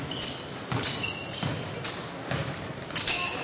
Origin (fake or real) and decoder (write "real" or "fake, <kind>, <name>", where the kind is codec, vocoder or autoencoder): real